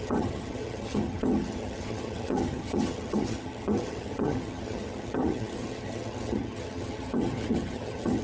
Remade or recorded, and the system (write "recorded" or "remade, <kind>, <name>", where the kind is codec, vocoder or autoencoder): remade, vocoder, HiFi-GAN